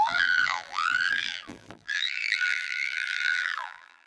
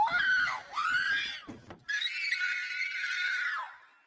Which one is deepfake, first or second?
first